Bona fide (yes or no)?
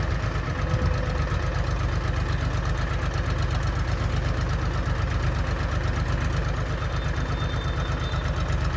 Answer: yes